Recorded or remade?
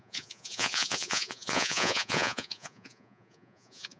remade